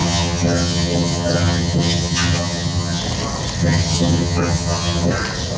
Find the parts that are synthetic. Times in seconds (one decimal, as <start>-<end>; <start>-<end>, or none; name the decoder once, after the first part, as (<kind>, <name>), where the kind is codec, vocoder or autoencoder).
0.0-3.0 (vocoder, HiFi-GAN); 3.6-5.1